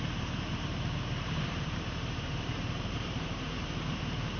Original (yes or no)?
no